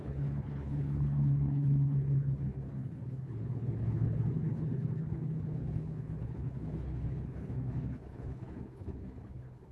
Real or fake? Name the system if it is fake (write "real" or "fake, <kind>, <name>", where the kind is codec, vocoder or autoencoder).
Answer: fake, codec, HILCodec